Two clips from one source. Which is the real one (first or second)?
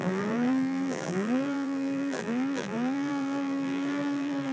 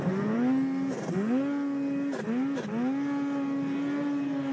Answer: second